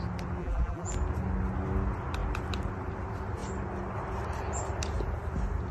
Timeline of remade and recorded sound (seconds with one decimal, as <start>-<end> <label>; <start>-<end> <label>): 0.0-0.4 recorded; 0.4-0.9 remade; 0.9-5.7 recorded